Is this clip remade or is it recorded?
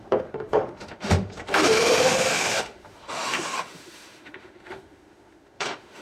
remade